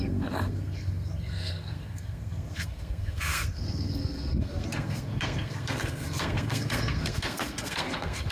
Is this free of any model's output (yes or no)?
no